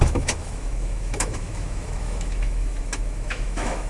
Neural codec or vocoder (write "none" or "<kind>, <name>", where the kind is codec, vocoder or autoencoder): autoencoder, DAC-VAE